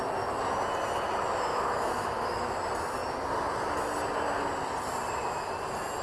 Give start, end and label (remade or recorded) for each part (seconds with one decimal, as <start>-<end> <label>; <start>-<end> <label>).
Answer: 0.0-1.5 recorded; 1.5-2.6 remade; 2.6-6.0 recorded

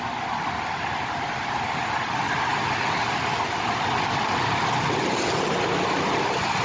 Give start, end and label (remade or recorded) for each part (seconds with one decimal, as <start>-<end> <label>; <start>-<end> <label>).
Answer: 0.0-6.6 recorded

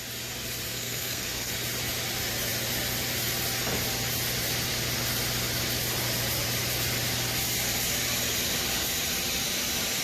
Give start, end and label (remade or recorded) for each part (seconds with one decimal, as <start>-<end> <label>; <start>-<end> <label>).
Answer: 0.0-0.7 recorded; 0.7-1.5 remade; 1.5-10.0 recorded

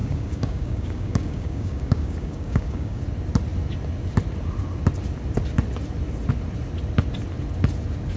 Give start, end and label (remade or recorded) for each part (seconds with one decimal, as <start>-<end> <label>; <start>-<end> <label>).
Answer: 0.0-3.0 remade; 3.0-8.2 recorded

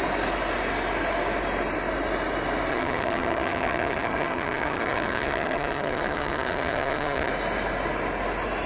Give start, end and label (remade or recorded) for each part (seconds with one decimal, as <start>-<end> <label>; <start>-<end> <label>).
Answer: 0.0-2.7 recorded; 2.7-7.3 remade; 7.3-8.7 recorded

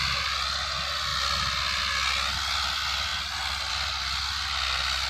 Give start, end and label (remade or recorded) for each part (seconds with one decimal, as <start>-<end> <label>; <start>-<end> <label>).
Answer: 0.0-5.1 recorded